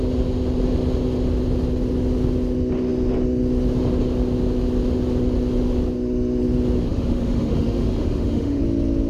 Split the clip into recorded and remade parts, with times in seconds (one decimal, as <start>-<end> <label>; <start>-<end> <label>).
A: 0.0-6.9 recorded; 6.9-8.6 remade; 8.6-9.1 recorded